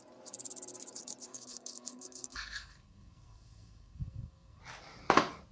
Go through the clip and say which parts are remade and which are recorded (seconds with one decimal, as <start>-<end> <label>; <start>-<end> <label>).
0.0-1.3 recorded; 1.3-4.6 remade; 4.6-5.5 recorded